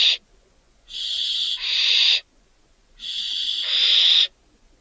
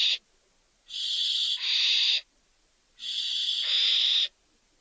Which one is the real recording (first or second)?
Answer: second